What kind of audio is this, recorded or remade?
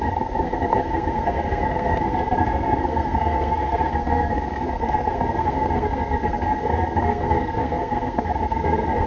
remade